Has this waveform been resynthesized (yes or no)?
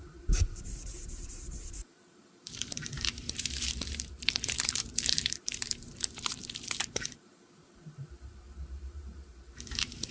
yes